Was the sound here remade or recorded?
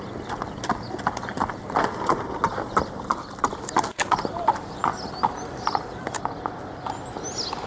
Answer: recorded